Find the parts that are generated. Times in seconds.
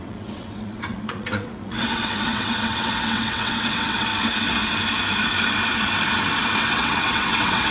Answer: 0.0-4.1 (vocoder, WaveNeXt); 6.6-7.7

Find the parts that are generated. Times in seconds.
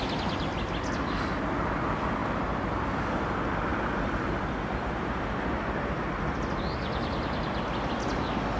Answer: none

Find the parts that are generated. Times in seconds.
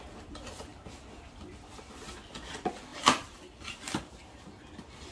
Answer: 2.9-3.4 (vocoder, BigVGAN v2)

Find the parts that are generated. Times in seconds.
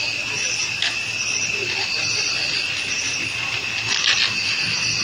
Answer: none